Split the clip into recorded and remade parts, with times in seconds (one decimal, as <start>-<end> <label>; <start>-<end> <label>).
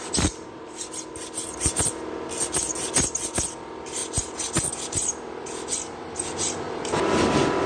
0.0-4.0 remade; 4.0-4.7 recorded; 4.7-7.7 remade